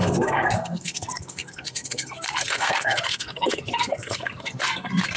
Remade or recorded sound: remade